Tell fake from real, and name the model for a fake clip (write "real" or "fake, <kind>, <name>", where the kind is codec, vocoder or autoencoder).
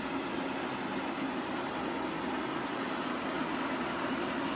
real